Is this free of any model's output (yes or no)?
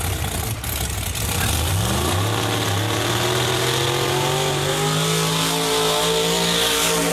yes